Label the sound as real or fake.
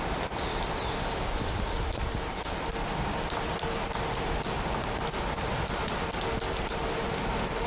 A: real